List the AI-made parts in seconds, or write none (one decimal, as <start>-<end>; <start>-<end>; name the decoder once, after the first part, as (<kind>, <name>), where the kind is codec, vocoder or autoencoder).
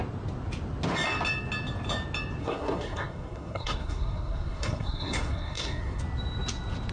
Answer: 2.4-6.0 (codec, SNAC)